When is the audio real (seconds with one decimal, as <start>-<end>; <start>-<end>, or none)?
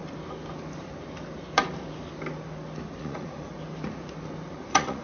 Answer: 0.0-3.0; 3.5-4.6